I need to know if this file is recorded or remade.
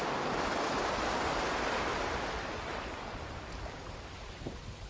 recorded